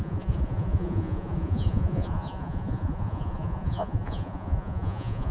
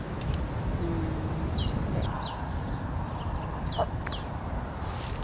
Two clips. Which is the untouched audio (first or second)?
second